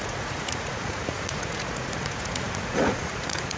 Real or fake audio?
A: fake